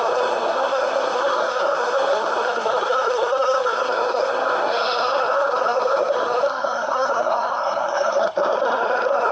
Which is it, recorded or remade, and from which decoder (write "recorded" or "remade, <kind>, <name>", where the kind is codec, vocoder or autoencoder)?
remade, codec, SNAC